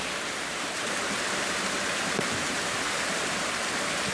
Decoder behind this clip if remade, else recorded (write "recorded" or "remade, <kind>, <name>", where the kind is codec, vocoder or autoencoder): recorded